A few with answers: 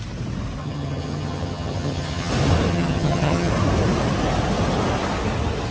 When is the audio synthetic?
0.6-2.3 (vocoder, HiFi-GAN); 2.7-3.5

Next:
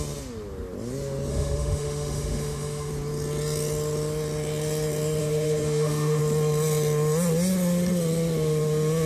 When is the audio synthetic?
1.3-2.9 (autoencoder, DAC-VAE); 5.2-6.2

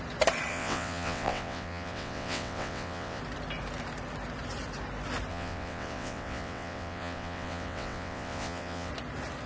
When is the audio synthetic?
0.5-3.2 (vocoder, WaveNeXt); 5.3-8.9